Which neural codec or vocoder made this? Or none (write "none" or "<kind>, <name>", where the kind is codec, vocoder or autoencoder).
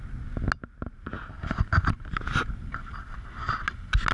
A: none